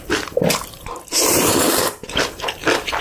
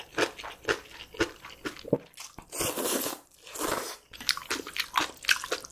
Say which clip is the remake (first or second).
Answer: first